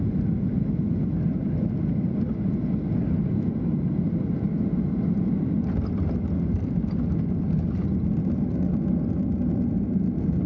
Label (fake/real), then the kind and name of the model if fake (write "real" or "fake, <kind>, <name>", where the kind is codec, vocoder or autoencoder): real